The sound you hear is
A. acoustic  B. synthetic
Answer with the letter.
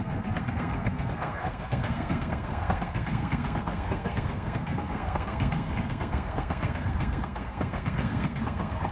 B